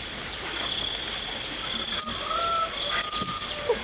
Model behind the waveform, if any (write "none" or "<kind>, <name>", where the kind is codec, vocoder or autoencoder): none